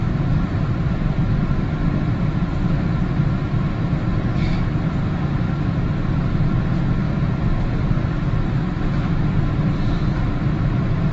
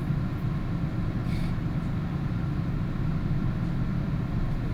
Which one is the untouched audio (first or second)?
second